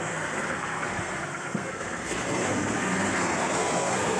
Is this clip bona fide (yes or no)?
no